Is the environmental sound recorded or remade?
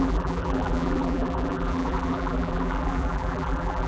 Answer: remade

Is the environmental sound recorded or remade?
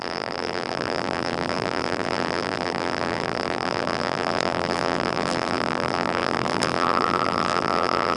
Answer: remade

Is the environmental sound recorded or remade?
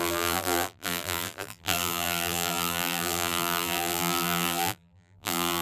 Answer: remade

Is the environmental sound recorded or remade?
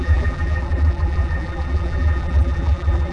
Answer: remade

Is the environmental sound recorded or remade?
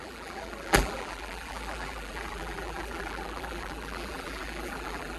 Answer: remade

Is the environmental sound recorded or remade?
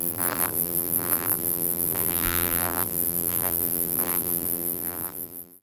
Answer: remade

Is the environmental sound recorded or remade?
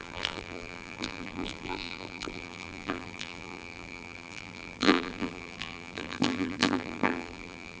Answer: remade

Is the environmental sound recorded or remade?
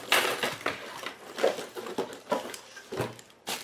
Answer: remade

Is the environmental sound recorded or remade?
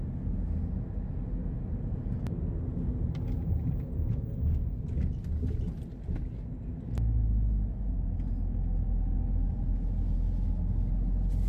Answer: recorded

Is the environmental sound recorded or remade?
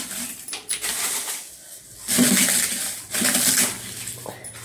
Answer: recorded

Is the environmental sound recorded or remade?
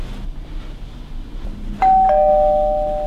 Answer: recorded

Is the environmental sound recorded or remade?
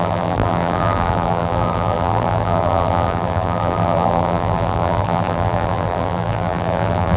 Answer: remade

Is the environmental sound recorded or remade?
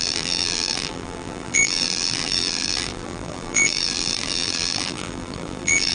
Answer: remade